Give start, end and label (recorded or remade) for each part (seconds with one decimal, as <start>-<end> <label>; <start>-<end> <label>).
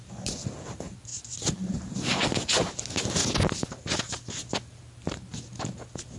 0.0-6.2 recorded